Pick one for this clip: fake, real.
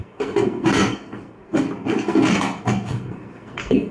fake